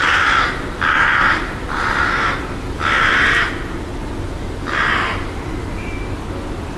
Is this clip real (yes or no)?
yes